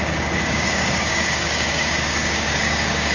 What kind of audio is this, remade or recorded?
remade